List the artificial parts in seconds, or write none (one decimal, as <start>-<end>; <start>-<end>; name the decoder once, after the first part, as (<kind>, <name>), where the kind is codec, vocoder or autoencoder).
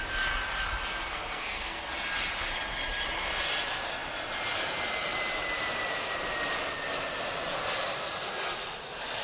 1.1-1.9 (codec, SNAC)